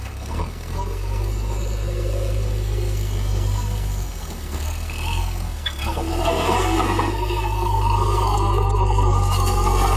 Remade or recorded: remade